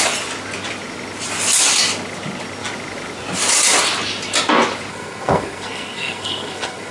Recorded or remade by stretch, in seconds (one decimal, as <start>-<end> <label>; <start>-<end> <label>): 0.0-4.9 recorded; 4.9-6.9 remade

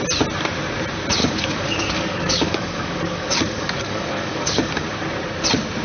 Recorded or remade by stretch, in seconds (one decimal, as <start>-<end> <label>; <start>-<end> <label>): 0.0-1.2 recorded; 1.2-4.7 remade; 4.7-5.8 recorded